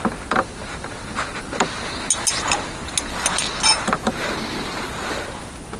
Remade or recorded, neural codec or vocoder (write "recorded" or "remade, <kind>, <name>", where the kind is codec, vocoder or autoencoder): recorded